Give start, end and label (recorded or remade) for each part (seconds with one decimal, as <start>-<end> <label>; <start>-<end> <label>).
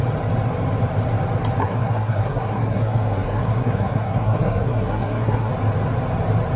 0.0-1.6 recorded; 1.6-5.5 remade; 5.5-6.6 recorded